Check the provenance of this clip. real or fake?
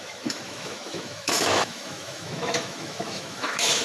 fake